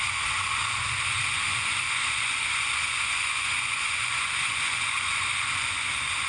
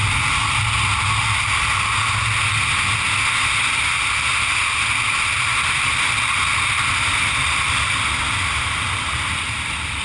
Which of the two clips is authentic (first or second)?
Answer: second